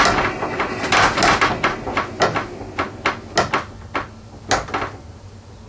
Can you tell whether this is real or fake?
real